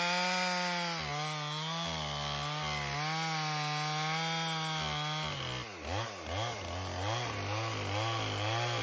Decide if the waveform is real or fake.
real